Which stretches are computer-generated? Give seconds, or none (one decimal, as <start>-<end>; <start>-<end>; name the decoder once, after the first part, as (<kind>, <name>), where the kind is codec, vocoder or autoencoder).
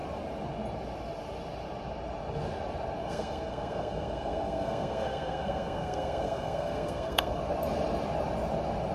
3.0-7.4 (codec, SNAC)